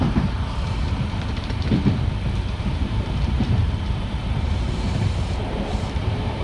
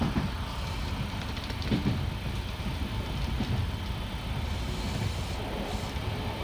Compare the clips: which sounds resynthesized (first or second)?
first